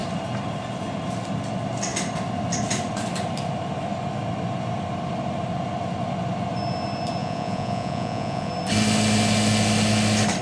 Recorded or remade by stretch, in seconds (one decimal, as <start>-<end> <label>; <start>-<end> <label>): 0.0-7.2 recorded; 7.2-8.5 remade; 8.5-10.4 recorded